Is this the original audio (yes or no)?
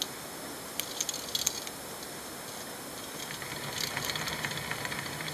yes